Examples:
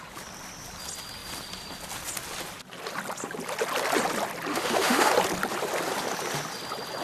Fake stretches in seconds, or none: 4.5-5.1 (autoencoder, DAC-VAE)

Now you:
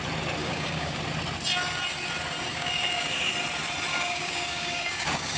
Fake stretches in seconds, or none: 0.4-1.0 (codec, DAC); 2.5-3.3; 3.9-5.4

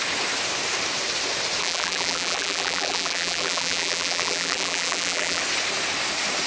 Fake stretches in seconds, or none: 1.6-5.4 (vocoder, BigVGAN v2)